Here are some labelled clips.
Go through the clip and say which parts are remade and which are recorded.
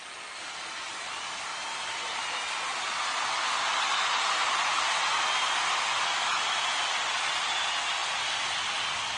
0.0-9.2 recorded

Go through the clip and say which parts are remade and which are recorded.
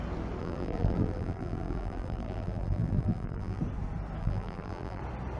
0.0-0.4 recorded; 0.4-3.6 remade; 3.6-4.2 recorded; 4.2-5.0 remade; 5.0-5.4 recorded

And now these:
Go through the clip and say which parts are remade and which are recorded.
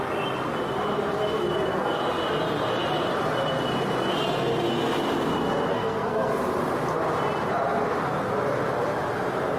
0.0-5.7 recorded; 5.7-6.4 remade; 6.4-9.6 recorded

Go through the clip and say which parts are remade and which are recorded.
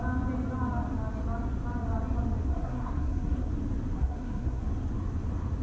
0.0-2.5 recorded; 2.5-3.5 remade; 3.5-4.0 recorded; 4.0-4.6 remade; 4.6-5.6 recorded